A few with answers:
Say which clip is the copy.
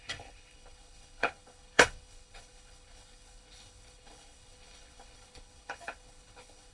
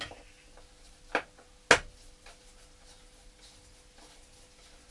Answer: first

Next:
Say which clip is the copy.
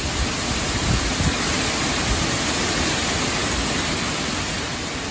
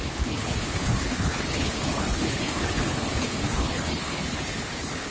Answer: second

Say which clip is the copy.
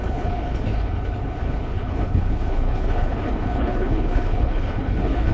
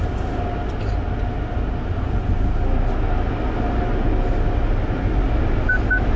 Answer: first